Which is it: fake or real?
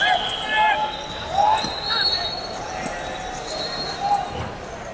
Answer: real